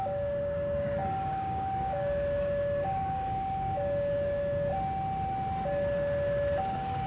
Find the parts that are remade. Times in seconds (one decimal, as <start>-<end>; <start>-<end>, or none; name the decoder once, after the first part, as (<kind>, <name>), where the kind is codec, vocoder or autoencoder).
0.0-4.7 (codec, DAC); 6.6-7.1